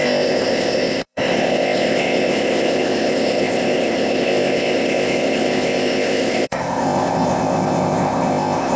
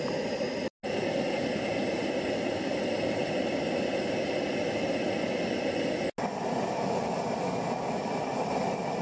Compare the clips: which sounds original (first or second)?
second